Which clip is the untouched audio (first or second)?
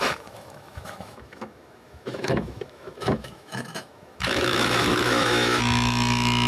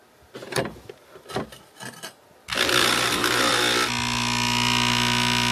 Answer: second